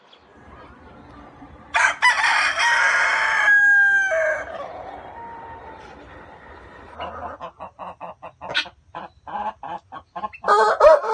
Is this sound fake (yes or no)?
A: no